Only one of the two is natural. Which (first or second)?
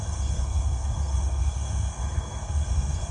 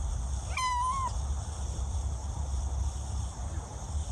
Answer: second